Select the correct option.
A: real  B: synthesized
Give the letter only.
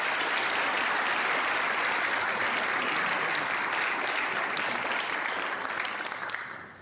A